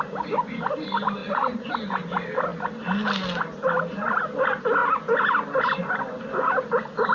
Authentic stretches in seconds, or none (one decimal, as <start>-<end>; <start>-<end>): 0.0-1.2; 1.7-7.1